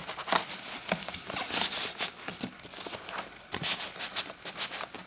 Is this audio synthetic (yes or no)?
no